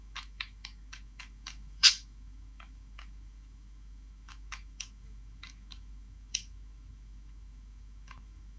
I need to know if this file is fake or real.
fake